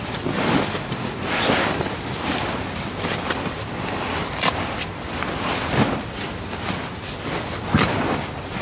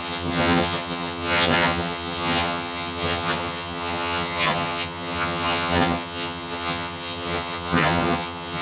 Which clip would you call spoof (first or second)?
second